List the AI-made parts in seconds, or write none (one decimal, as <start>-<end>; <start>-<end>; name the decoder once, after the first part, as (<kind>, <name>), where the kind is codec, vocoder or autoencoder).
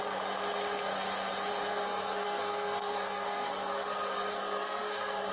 1.7-5.3 (codec, SNAC)